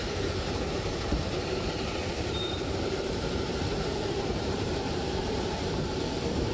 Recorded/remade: remade